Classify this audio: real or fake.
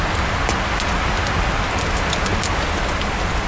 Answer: real